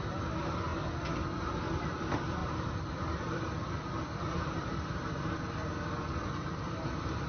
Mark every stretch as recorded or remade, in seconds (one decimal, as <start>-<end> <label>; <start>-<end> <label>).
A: 0.0-2.4 recorded; 2.4-5.4 remade; 5.4-7.3 recorded